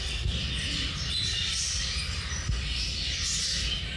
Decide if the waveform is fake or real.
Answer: real